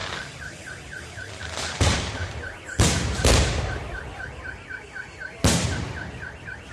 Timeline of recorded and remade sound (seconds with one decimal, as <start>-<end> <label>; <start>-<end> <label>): 0.0-1.4 remade; 1.4-2.2 recorded; 2.2-2.8 remade; 2.8-6.7 recorded